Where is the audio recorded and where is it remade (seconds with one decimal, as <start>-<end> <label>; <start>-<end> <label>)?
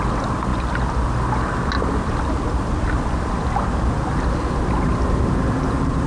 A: 0.0-6.1 recorded